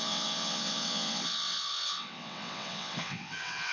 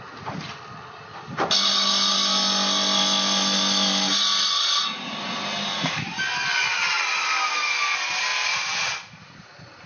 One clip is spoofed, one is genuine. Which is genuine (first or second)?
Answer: second